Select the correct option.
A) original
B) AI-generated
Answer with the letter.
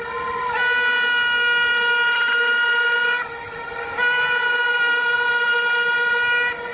A